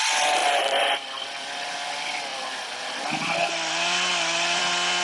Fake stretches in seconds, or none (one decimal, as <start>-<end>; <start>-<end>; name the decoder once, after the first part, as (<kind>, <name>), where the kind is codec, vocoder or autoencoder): 0.4-1.7 (vocoder, BigVGAN v2); 2.3-4.6